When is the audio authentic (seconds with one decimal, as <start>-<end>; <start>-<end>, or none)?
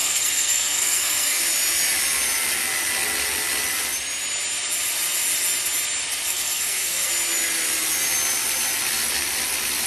1.4-6.3; 7.1-9.9